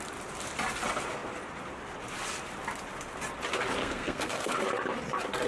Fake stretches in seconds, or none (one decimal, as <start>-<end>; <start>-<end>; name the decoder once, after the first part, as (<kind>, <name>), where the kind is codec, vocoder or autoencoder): 3.8-4.5 (codec, SNAC)